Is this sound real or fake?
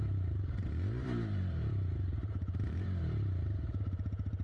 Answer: fake